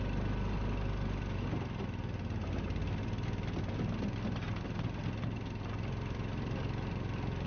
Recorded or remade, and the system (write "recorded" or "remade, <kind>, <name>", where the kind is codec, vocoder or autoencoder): recorded